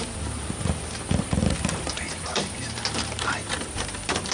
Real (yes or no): no